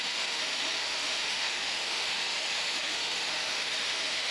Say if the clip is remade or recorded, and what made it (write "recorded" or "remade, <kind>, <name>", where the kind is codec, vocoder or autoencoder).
remade, autoencoder, DAC-VAE